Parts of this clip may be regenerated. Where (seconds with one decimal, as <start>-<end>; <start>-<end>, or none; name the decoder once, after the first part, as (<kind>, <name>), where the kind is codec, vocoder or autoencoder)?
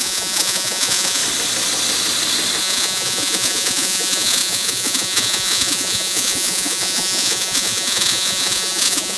0.0-1.2 (vocoder, Vocos); 2.6-9.2